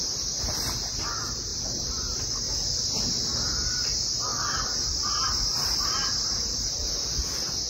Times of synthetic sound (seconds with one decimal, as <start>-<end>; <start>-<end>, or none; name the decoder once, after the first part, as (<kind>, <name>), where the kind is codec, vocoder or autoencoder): 1.5-2.2 (vocoder, BigVGAN v2); 4.3-4.9